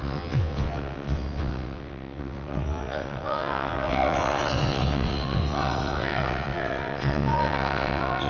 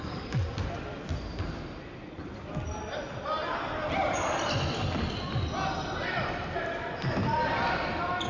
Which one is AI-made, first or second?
first